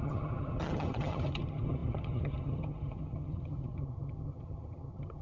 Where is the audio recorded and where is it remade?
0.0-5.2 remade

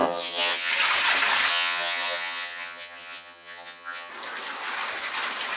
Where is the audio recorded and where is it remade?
0.0-0.7 remade; 0.7-1.5 recorded; 1.5-4.1 remade; 4.1-5.6 recorded

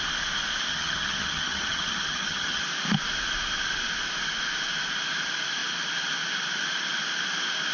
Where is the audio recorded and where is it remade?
0.0-0.7 recorded; 0.7-2.6 remade; 2.6-7.7 recorded

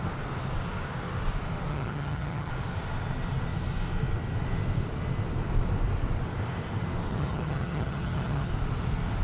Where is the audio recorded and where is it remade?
0.0-1.7 recorded; 1.7-2.5 remade; 2.5-7.1 recorded; 7.1-8.5 remade; 8.5-9.2 recorded

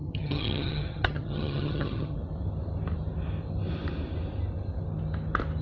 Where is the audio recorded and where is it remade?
0.0-2.2 remade; 2.2-5.6 recorded

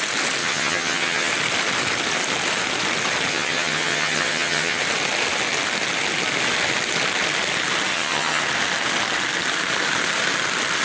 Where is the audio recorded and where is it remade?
0.0-0.4 recorded; 0.4-1.3 remade; 1.3-3.3 recorded; 3.3-4.8 remade; 4.8-7.9 recorded; 7.9-8.4 remade; 8.4-10.8 recorded

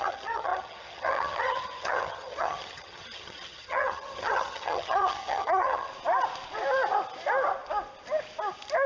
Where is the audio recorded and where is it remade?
0.0-5.9 remade; 5.9-8.9 recorded